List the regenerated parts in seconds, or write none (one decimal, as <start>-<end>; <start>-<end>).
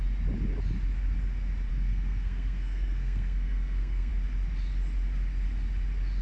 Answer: 1.7-4.1